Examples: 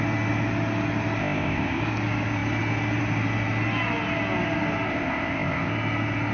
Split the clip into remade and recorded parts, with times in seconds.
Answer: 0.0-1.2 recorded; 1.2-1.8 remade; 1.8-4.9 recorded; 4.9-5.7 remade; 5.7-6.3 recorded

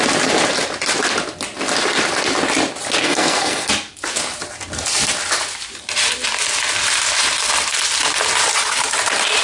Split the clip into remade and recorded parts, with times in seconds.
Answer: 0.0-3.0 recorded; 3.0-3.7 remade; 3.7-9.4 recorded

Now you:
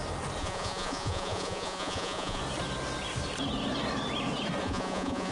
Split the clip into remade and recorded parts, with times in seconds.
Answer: 0.0-0.4 recorded; 0.4-2.4 remade; 2.4-4.6 recorded; 4.6-5.3 remade

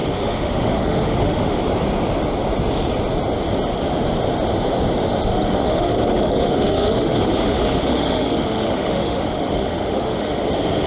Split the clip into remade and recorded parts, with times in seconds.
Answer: 0.0-1.6 remade; 1.6-5.3 recorded; 5.3-10.4 remade; 10.4-10.9 recorded

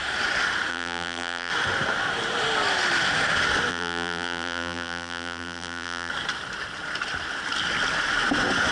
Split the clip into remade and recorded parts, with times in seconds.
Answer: 0.0-0.7 recorded; 0.7-1.5 remade; 1.5-3.7 recorded; 3.7-6.1 remade; 6.1-8.7 recorded